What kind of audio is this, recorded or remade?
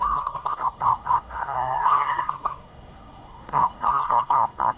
remade